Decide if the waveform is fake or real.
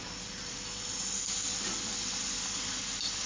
real